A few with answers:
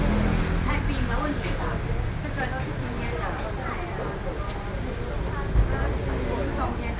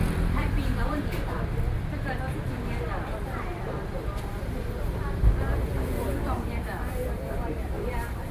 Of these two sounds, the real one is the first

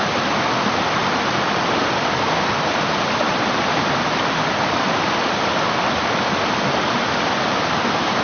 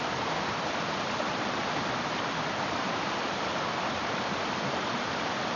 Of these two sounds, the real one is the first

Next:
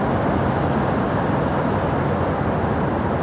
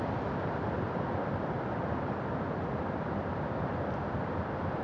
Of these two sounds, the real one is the first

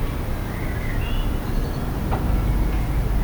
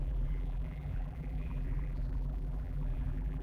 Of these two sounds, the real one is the first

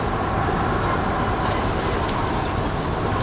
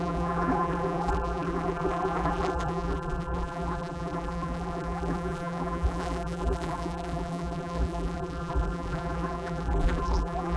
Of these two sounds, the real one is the first